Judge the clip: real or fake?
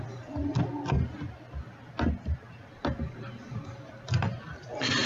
real